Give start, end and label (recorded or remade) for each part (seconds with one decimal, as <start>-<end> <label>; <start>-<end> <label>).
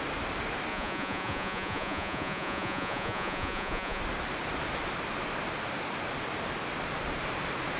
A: 0.0-0.7 recorded; 0.7-4.0 remade; 4.0-7.8 recorded